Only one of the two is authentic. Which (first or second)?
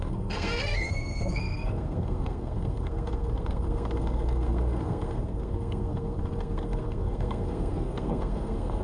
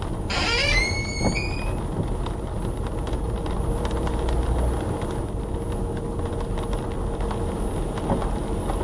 second